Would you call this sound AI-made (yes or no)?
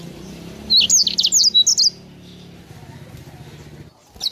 no